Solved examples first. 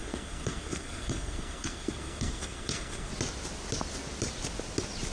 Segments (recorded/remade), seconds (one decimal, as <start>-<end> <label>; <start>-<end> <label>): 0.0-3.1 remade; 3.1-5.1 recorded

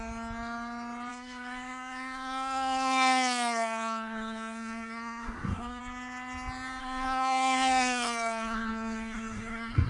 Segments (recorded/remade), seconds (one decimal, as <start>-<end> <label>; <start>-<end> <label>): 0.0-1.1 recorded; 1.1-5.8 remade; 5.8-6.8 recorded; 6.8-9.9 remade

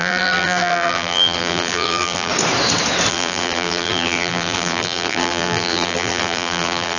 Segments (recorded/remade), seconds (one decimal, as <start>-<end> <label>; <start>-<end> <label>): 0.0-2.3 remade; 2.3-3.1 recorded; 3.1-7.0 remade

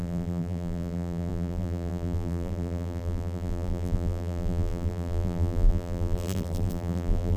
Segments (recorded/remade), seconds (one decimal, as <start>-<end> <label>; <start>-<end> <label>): 0.0-7.4 remade

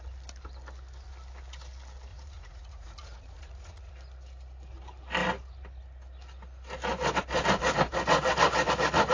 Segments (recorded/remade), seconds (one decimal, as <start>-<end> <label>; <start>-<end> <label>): 0.0-2.1 recorded; 2.1-3.9 remade; 3.9-9.1 recorded

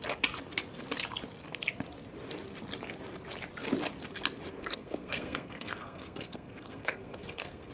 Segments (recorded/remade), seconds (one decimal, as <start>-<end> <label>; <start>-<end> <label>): 0.0-4.5 recorded; 4.5-7.7 remade